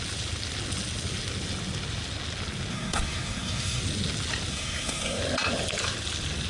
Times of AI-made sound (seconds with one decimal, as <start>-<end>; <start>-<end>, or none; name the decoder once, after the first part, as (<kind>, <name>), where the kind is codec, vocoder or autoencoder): 2.7-3.8 (codec, SNAC); 4.5-5.2